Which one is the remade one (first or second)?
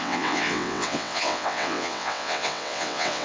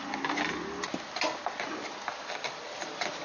first